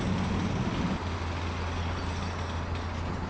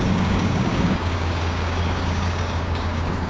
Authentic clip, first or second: first